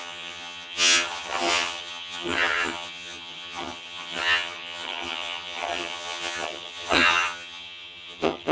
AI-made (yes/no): yes